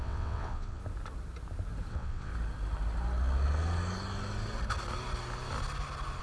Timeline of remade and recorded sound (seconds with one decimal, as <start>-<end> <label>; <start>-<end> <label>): 0.0-0.8 remade; 0.8-1.9 recorded; 1.9-2.3 remade; 2.3-6.2 recorded